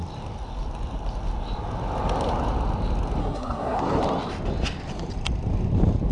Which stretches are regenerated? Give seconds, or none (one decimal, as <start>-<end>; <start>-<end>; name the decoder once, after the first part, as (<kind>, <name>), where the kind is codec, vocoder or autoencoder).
3.2-3.8 (codec, SNAC)